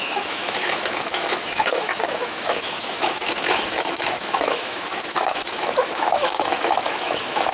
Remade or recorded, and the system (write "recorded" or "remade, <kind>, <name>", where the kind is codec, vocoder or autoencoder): remade, autoencoder, DAC-VAE